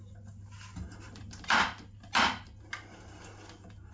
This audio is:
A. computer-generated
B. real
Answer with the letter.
B